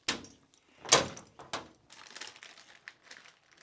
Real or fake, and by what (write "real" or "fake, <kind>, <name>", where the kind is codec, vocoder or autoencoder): real